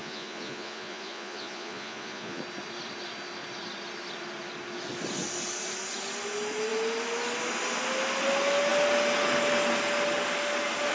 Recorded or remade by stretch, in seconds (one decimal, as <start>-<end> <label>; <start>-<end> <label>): 0.0-2.4 remade; 2.4-10.9 recorded